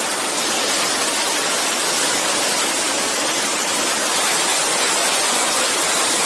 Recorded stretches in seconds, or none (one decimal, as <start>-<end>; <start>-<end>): 0.0-4.5; 5.7-6.3